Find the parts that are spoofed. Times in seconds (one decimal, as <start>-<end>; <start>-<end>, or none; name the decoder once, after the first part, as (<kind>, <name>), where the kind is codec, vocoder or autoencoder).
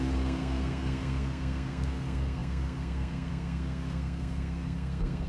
0.0-5.3 (codec, SNAC)